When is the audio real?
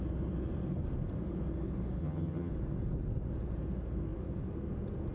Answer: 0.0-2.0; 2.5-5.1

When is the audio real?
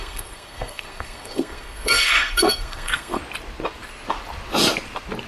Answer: 3.2-5.3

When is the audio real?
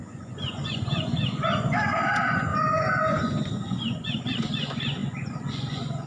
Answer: none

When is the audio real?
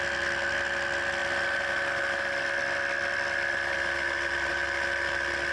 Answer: 0.0-5.5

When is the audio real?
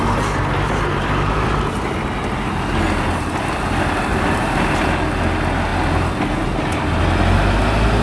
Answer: 0.0-8.0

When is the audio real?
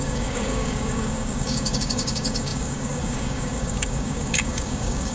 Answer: none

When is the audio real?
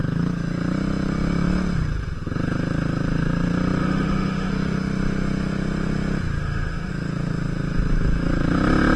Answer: 0.0-3.8; 4.5-6.4; 6.9-9.0